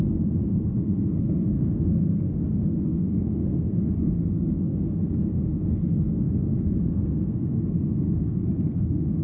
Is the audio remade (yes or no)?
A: yes